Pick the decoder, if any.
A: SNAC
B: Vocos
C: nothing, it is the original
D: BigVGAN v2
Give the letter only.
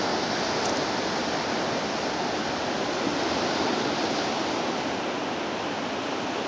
C